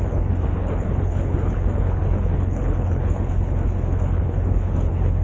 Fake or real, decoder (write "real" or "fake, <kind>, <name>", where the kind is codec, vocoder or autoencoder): fake, codec, HILCodec